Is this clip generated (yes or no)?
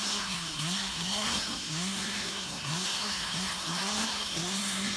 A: yes